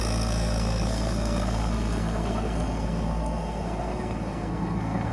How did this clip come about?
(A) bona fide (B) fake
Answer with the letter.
B